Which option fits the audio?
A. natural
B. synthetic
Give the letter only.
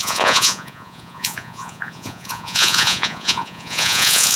B